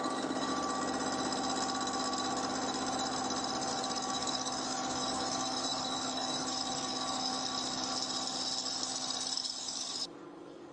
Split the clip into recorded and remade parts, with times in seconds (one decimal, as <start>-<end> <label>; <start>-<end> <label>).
0.0-0.5 remade; 0.5-3.7 recorded; 3.7-7.3 remade; 7.3-9.3 recorded; 9.3-10.7 remade